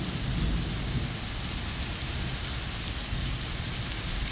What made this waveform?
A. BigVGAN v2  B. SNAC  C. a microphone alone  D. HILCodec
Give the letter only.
C